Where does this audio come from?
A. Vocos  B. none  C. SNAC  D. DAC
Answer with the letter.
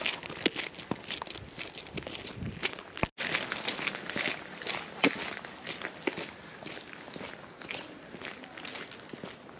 B